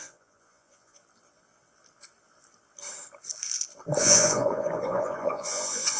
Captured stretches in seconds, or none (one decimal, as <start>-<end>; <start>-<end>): 1.0-4.0